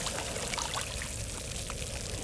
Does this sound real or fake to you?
real